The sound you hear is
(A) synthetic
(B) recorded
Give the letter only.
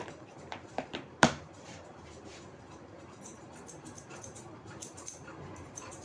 A